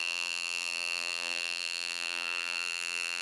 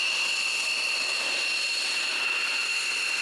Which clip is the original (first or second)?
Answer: second